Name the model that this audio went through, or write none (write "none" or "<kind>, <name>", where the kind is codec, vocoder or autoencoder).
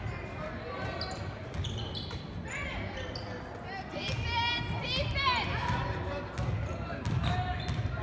none